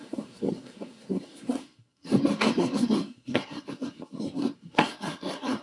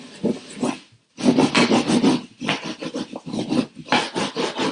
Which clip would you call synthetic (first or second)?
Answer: first